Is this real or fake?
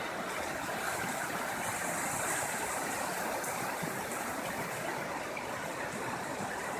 fake